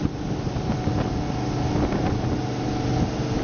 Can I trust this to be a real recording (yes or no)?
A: yes